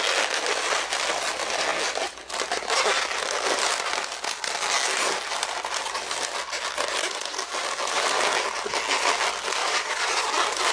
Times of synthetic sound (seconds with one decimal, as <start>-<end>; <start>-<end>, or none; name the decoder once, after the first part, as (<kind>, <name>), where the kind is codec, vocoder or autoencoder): 9.6-10.2 (vocoder, Vocos)